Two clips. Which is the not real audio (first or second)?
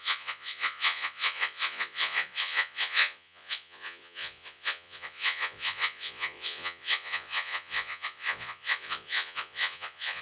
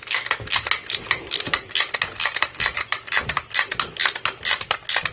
first